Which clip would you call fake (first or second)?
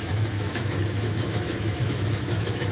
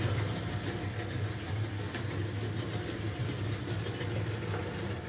first